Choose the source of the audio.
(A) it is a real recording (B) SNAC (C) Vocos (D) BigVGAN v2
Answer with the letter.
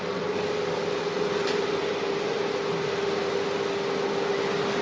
A